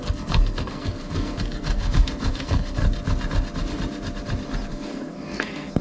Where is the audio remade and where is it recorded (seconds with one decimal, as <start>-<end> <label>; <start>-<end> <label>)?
0.0-2.8 remade; 2.8-4.7 recorded; 4.7-5.8 remade